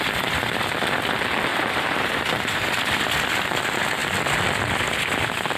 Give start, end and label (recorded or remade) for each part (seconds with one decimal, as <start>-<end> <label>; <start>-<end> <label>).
0.0-1.5 recorded; 1.5-2.8 remade; 2.8-5.6 recorded